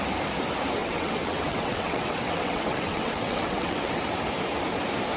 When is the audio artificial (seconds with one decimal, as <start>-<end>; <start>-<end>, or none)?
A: 0.8-3.9